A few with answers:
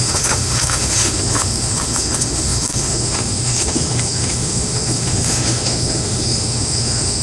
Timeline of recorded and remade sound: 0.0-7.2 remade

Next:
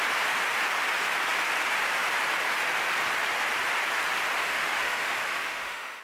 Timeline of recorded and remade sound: 0.0-4.4 recorded; 4.4-6.0 remade